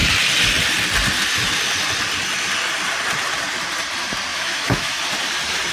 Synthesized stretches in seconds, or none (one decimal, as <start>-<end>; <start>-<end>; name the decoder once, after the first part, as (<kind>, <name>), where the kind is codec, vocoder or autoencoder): 4.3-5.0 (autoencoder, DAC-VAE)